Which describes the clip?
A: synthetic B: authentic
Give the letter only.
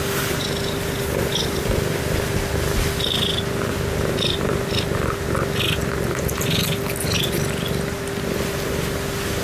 B